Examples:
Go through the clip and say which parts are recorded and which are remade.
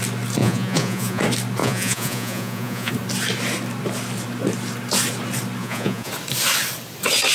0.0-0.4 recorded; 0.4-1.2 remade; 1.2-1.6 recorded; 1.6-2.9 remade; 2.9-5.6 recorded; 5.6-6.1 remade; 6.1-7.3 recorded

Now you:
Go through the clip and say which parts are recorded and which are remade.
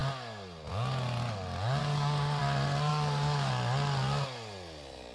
0.0-1.8 recorded; 1.8-2.4 remade; 2.4-2.9 recorded; 2.9-3.5 remade; 3.5-5.1 recorded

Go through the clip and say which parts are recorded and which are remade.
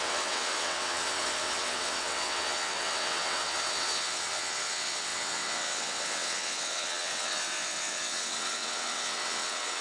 0.0-9.8 remade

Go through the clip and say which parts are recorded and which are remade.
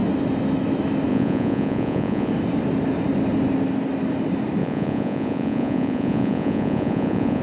0.0-1.1 recorded; 1.1-2.3 remade; 2.3-4.6 recorded; 4.6-7.4 remade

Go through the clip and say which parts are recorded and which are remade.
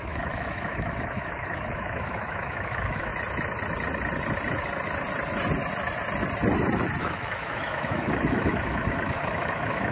0.0-3.1 remade; 3.1-7.0 recorded; 7.0-9.9 remade